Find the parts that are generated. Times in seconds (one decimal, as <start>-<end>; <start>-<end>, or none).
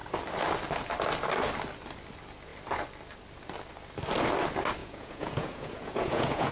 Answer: 4.8-6.5